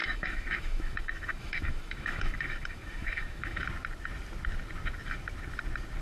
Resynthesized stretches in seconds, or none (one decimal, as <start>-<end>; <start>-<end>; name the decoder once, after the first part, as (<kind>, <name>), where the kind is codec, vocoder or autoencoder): 0.0-3.6 (autoencoder, DAC-VAE)